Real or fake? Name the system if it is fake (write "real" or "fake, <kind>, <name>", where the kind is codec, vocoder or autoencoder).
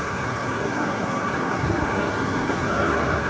fake, codec, SNAC